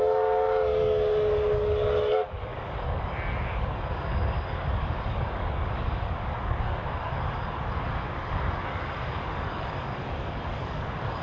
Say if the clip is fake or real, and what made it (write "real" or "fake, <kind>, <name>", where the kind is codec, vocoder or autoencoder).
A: fake, codec, DAC